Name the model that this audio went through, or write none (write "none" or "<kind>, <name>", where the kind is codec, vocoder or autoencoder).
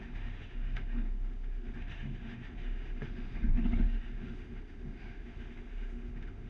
autoencoder, DAC-VAE